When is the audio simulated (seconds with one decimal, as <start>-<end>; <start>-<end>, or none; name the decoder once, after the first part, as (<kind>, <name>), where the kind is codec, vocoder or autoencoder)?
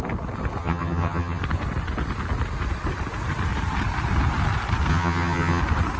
0.6-1.4 (vocoder, HiFi-GAN); 4.9-5.6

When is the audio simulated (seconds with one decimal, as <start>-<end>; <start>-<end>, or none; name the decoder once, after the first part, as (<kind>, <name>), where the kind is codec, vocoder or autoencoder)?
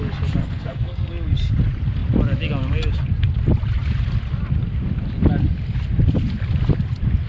0.4-1.1 (codec, SNAC)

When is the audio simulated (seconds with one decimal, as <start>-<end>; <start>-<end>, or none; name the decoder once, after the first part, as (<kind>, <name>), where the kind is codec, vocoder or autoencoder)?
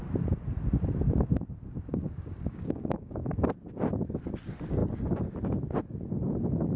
1.9-3.5 (codec, DAC)